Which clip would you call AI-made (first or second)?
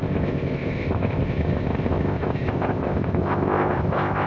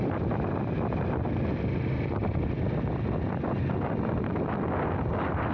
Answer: first